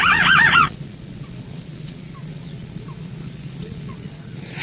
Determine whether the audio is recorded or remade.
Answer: remade